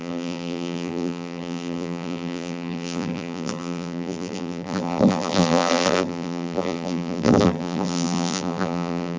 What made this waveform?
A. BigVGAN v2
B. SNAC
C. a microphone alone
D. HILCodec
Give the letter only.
A